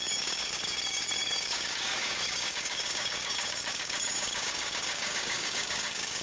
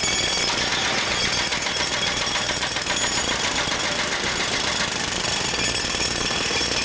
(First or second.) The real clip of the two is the second